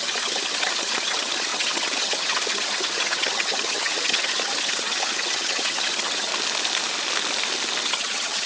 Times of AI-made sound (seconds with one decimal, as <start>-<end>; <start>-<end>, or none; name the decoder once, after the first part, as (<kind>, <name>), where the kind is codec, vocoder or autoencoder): 0.0-6.3 (vocoder, HiFi-GAN); 7.8-8.5